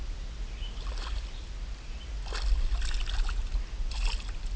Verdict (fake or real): real